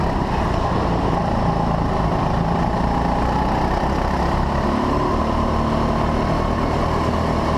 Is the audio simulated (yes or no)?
no